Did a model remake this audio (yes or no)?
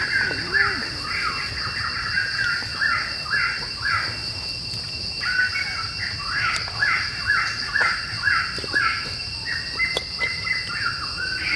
no